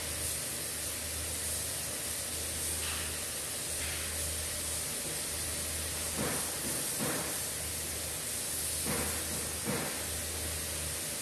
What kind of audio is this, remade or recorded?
recorded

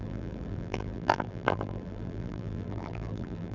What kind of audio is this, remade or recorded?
remade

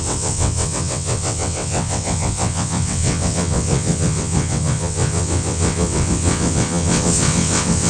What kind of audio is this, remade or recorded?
remade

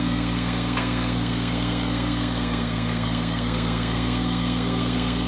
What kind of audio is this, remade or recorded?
remade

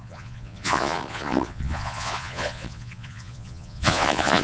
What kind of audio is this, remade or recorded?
remade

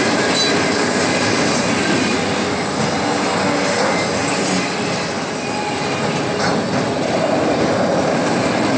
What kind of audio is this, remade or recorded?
recorded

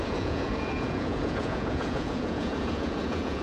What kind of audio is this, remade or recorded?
remade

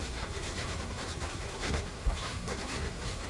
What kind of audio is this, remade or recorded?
remade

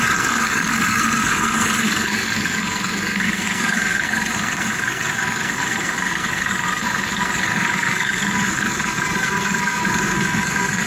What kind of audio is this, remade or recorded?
remade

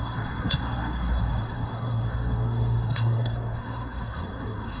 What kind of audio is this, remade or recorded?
remade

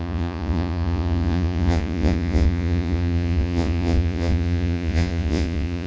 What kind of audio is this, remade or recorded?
remade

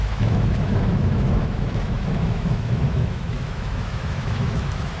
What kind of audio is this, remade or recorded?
remade